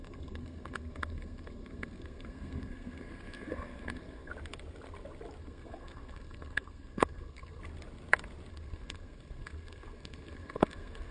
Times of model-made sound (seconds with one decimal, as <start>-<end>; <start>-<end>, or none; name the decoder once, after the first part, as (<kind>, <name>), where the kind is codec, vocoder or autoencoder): 0.0-4.3 (codec, SNAC); 5.4-7.6; 8.5-11.1

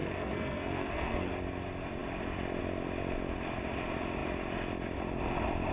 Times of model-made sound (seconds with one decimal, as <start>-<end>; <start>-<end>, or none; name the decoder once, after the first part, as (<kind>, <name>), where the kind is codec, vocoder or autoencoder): 0.0-1.3 (codec, SNAC)

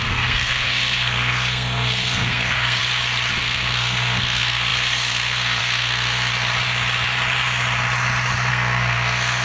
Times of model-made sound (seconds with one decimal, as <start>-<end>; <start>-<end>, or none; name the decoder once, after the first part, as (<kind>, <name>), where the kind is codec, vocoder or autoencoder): 0.0-2.8 (codec, SNAC); 3.4-6.3; 8.5-9.4

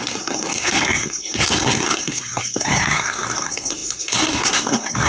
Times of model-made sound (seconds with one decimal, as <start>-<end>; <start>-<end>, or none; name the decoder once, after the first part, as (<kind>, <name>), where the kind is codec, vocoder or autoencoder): 0.0-5.1 (codec, SNAC)